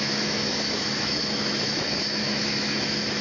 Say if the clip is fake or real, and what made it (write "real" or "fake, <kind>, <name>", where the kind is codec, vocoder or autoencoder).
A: fake, autoencoder, DAC-VAE